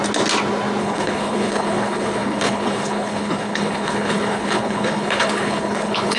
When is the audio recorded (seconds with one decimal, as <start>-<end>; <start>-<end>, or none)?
0.0-0.8